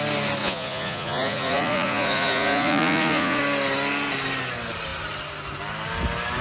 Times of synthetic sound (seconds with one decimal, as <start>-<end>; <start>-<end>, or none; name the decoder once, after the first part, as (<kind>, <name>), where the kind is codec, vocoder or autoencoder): 0.4-3.4 (vocoder, Vocos)